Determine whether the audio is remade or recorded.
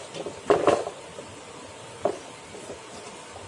recorded